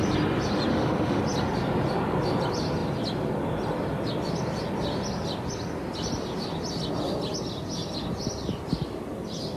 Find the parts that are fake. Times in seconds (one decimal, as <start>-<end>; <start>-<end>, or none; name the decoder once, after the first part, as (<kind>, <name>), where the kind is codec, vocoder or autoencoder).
0.7-1.2 (autoencoder, DAC-VAE)